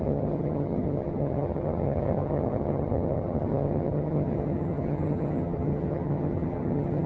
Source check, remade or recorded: remade